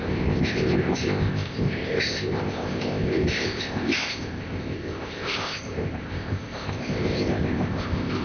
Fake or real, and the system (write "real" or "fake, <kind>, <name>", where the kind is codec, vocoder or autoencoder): fake, codec, ZipCodec